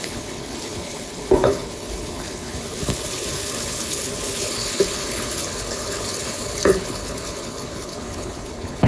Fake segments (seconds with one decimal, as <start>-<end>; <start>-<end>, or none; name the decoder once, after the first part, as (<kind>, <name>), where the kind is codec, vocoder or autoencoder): 0.0-8.9 (codec, HILCodec)